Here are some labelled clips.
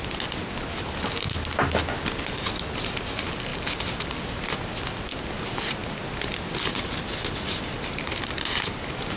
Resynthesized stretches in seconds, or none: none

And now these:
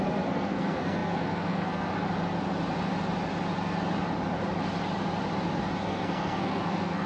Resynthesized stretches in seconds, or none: 0.0-1.9 (codec, SNAC); 5.8-7.1

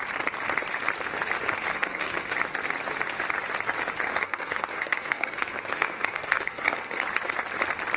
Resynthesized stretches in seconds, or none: 1.7-2.3 (codec, SNAC); 4.1-7.0

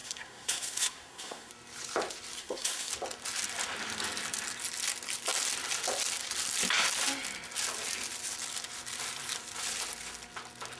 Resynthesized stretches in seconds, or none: 0.0-1.5 (codec, SNAC); 2.4-2.9

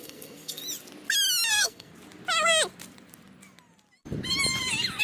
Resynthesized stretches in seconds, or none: 0.0-0.6 (codec, SNAC); 1.5-1.9

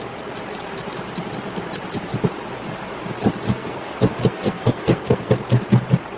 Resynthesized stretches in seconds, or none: 3.5-5.3 (codec, SNAC)

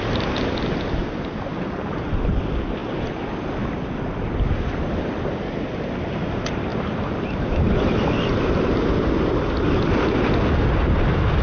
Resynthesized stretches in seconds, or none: none